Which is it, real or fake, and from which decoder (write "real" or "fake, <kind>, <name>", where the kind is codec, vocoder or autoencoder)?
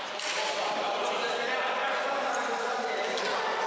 real